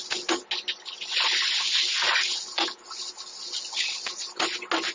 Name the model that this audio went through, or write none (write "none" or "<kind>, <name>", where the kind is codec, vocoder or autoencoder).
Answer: none